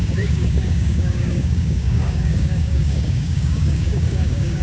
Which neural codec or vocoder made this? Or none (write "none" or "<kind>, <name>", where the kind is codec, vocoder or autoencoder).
codec, DAC